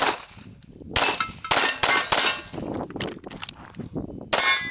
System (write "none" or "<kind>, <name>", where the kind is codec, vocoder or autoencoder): none